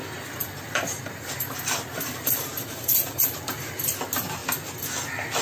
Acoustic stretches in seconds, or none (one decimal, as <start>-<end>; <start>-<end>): 0.0-0.4; 3.6-5.4